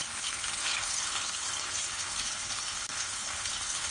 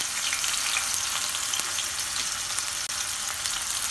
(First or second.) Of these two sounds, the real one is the second